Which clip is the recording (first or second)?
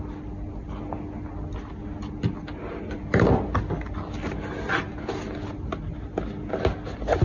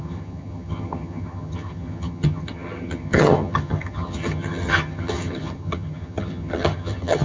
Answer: first